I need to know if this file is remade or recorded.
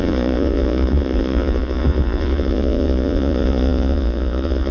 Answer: remade